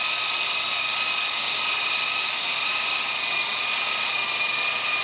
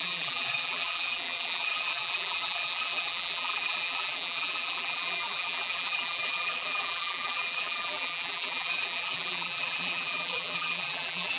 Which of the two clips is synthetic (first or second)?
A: second